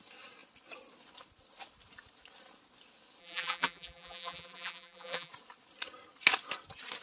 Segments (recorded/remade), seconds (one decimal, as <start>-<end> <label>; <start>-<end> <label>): 0.0-3.2 recorded; 3.2-5.3 remade; 5.3-7.0 recorded